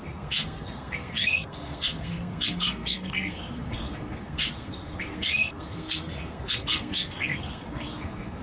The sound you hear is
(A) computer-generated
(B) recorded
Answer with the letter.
A